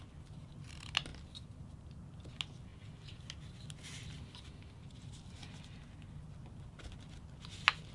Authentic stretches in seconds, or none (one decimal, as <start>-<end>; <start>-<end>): 0.0-7.9